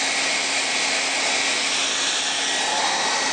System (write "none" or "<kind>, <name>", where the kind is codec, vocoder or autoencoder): none